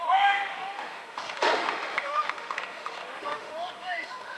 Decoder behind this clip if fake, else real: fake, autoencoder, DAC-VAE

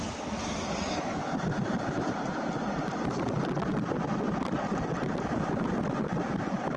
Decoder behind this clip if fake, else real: real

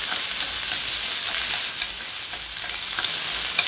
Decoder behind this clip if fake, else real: real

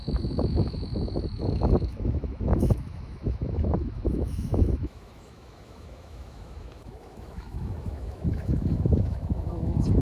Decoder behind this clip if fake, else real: fake, autoencoder, DAC-VAE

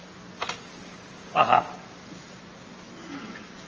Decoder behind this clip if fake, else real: real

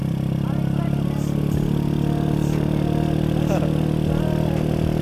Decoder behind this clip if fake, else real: real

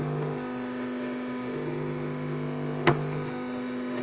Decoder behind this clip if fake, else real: fake, autoencoder, DAC-VAE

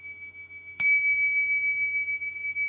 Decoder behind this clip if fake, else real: fake, autoencoder, DAC-VAE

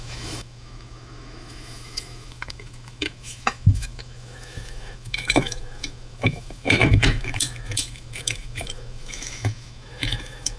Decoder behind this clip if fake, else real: fake, autoencoder, DAC-VAE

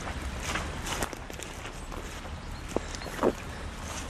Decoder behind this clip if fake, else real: real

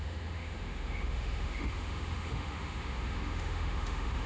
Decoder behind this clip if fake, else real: fake, autoencoder, DAC-VAE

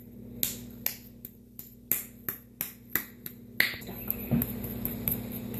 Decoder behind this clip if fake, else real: real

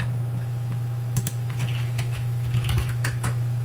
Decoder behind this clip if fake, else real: fake, autoencoder, DAC-VAE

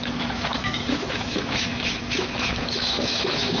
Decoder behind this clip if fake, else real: fake, autoencoder, DAC-VAE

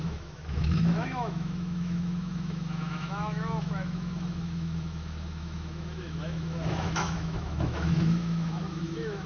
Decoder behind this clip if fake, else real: fake, autoencoder, DAC-VAE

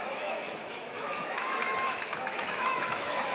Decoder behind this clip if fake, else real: fake, autoencoder, DAC-VAE